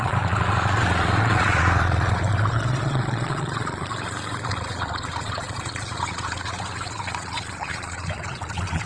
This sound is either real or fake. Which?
fake